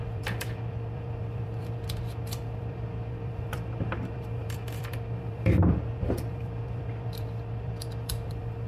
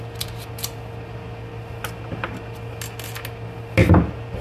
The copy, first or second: first